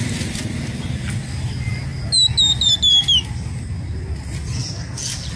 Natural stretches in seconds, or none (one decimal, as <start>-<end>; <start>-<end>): 0.0-5.4